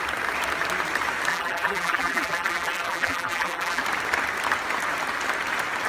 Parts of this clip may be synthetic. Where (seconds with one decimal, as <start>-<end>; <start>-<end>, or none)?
1.3-3.8